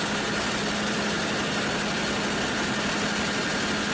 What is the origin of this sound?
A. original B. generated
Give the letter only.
A